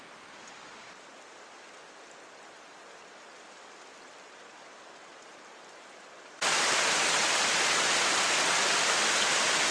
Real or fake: real